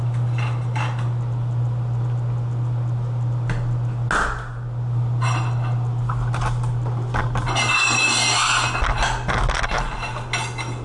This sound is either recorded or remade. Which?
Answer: recorded